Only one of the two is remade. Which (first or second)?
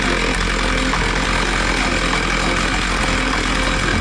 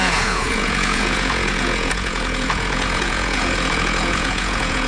second